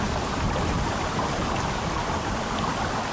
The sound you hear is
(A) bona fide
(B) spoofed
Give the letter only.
A